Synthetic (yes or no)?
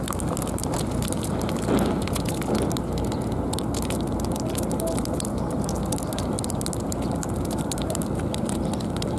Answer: no